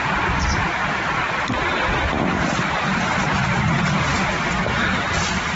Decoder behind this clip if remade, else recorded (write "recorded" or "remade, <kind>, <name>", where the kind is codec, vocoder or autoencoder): remade, vocoder, BigVGAN v2